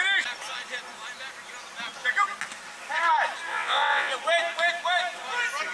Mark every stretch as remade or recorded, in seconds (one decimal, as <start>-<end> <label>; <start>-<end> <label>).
0.0-3.5 recorded; 3.5-4.1 remade; 4.1-5.7 recorded